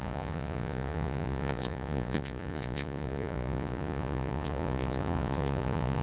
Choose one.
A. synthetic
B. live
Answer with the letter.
A